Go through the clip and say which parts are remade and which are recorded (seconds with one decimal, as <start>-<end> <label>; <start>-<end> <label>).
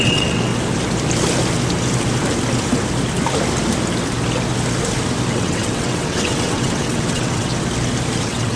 0.0-0.5 remade; 0.5-5.3 recorded; 5.3-7.5 remade; 7.5-8.2 recorded; 8.2-8.6 remade